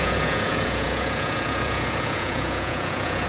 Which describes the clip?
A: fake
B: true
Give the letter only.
A